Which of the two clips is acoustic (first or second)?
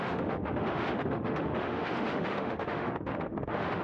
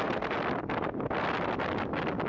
second